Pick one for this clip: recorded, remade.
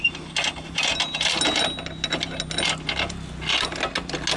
recorded